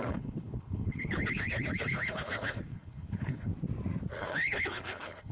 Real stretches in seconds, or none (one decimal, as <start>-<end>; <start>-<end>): 3.5-4.2